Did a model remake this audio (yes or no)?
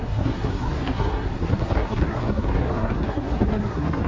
yes